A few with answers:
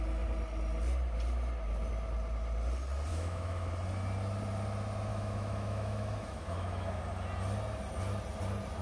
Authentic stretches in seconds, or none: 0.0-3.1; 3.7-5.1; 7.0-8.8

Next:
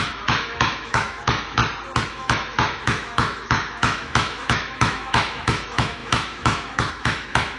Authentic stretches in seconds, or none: 1.6-2.1

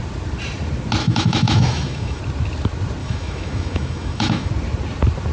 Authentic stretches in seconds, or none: 0.0-1.0; 2.2-3.0; 4.5-5.3

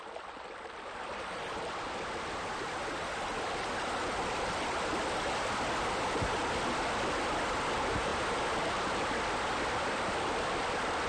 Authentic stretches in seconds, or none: 0.0-11.1

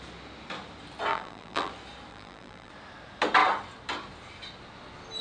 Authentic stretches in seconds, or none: 0.0-1.1; 1.7-2.1; 2.7-5.2

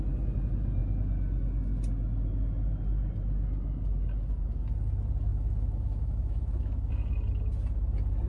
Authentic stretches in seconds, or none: 0.0-5.3; 6.9-8.3